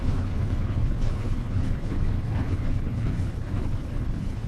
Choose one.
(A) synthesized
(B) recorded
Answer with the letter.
A